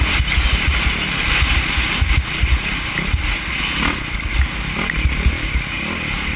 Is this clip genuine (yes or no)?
yes